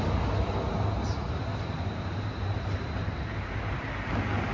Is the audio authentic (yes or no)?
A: yes